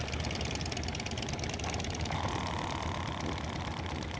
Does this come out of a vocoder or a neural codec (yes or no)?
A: no